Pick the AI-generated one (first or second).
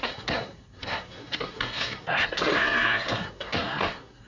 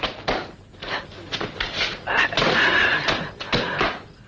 first